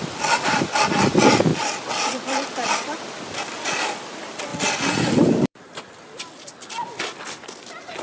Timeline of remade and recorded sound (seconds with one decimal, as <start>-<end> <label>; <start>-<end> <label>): 0.0-1.5 recorded; 1.5-2.5 remade; 2.5-4.5 recorded; 4.5-6.5 remade; 6.5-8.0 recorded